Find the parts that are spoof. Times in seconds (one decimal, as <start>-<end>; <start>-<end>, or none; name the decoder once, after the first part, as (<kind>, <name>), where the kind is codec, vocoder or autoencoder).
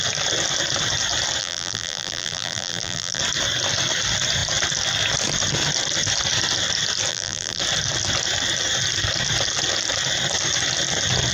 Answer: 1.4-3.2 (vocoder, BigVGAN v2); 7.1-7.6